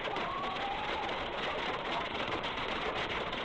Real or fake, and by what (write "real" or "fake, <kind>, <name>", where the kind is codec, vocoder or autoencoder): fake, vocoder, Vocos